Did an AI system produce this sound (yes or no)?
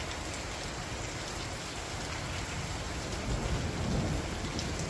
no